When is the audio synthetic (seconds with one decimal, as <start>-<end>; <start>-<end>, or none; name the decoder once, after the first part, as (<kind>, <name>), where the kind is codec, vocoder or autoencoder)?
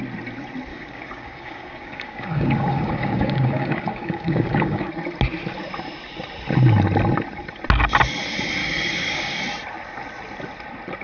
0.7-4.9 (codec, DAC); 8.6-9.4